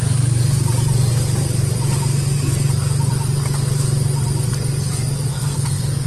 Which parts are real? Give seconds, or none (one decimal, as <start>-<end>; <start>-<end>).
0.0-5.3